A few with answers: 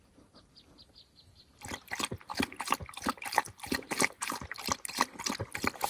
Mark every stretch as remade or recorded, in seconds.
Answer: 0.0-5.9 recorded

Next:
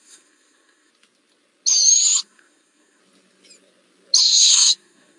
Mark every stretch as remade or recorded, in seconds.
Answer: 0.0-0.9 remade; 0.9-2.2 recorded; 2.2-3.0 remade; 3.0-4.2 recorded; 4.2-5.2 remade